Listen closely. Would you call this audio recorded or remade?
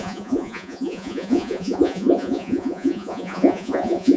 remade